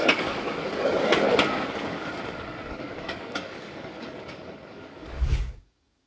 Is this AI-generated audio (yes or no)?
yes